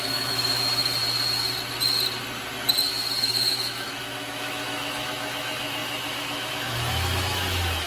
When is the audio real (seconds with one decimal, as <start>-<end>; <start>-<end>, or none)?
1.0-3.2